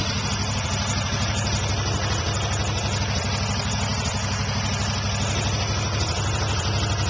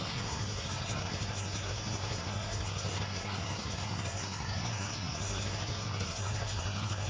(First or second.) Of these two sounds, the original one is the first